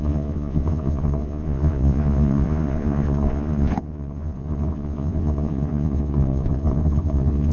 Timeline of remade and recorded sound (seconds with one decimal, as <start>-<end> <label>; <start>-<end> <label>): 0.0-7.5 remade